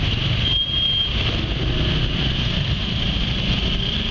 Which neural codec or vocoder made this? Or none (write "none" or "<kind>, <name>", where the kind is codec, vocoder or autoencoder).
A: none